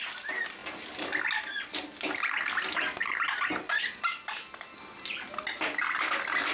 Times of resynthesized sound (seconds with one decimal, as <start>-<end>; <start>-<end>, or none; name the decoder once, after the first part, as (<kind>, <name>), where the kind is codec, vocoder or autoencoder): none